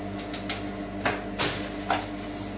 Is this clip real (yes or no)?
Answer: yes